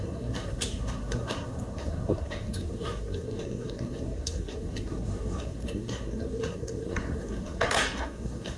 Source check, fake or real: fake